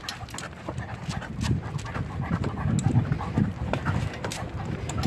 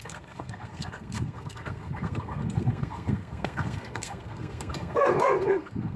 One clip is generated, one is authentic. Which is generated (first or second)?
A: second